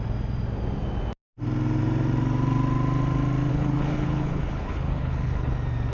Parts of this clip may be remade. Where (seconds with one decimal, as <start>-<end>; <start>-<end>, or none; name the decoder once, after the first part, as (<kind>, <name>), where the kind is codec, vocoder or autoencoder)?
3.5-5.5 (codec, HILCodec)